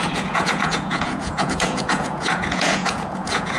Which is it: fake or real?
fake